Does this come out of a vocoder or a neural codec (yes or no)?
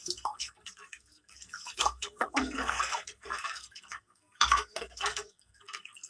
yes